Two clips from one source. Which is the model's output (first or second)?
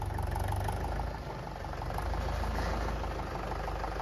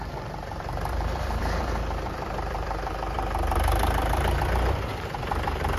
second